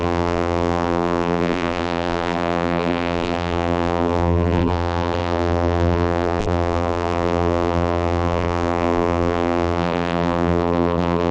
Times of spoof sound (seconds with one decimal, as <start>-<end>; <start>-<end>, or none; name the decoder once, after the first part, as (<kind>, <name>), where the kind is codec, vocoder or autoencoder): 0.0-11.3 (vocoder, BigVGAN v2)